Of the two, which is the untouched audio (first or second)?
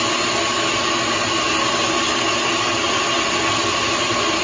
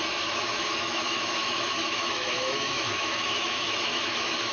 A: first